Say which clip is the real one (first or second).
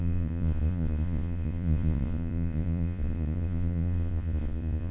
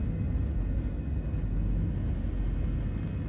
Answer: second